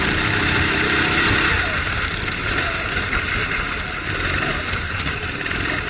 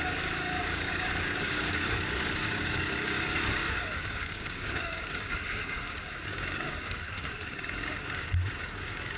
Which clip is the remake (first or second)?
second